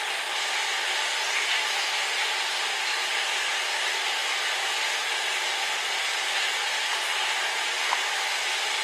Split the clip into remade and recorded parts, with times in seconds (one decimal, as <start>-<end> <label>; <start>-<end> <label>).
0.0-8.8 recorded